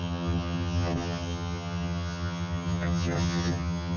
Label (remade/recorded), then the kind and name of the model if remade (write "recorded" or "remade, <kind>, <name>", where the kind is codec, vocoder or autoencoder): remade, vocoder, HiFi-GAN